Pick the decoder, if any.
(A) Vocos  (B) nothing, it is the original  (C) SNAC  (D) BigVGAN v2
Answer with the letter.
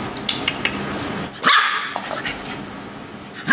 B